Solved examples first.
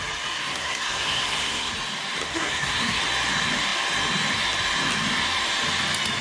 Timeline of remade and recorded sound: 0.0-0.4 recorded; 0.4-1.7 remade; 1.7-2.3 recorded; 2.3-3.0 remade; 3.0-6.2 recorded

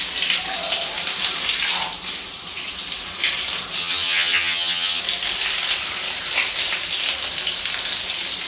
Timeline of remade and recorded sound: 0.0-3.8 recorded; 3.8-5.0 remade; 5.0-8.5 recorded

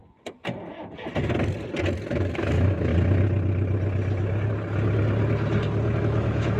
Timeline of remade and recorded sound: 0.0-2.1 recorded; 2.1-2.9 remade; 2.9-6.0 recorded; 6.0-6.6 remade

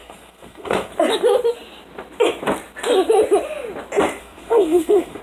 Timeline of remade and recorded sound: 0.0-0.9 remade; 0.9-4.2 recorded; 4.2-5.2 remade